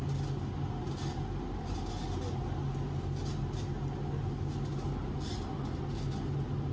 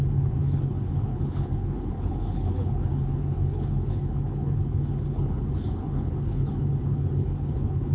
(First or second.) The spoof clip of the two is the second